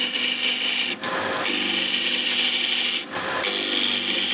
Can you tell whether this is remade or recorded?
recorded